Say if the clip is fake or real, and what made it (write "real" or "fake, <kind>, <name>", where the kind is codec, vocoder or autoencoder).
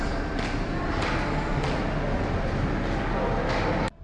real